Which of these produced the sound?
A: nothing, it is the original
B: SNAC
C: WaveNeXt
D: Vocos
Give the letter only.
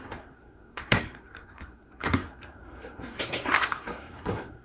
B